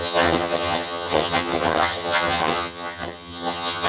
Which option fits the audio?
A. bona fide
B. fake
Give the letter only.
B